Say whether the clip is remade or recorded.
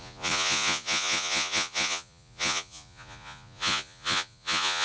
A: remade